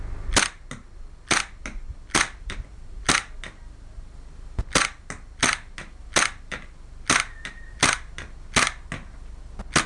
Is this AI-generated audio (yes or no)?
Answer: no